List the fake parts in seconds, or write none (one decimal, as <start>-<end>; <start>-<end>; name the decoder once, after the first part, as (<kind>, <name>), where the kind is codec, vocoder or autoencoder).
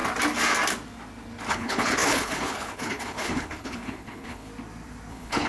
1.5-4.5 (codec, HILCodec); 5.1-5.5